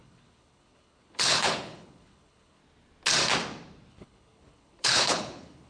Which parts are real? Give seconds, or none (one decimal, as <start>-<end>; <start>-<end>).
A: 2.6-3.9